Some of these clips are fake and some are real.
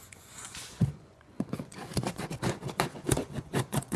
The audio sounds fake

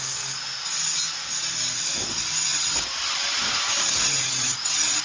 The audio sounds real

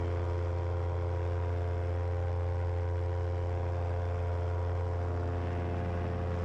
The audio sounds real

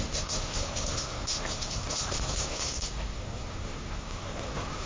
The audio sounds fake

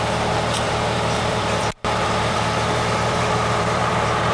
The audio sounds fake